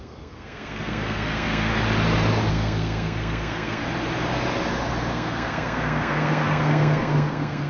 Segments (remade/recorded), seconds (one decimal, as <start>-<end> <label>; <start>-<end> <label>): 0.0-1.7 remade; 1.7-2.5 recorded; 2.5-3.8 remade; 3.8-5.1 recorded; 5.1-7.7 remade